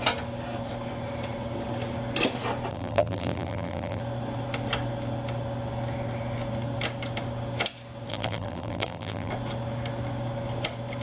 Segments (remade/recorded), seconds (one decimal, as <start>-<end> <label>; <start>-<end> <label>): 0.0-2.7 recorded; 2.7-4.0 remade; 4.0-8.1 recorded; 8.1-9.3 remade; 9.3-11.0 recorded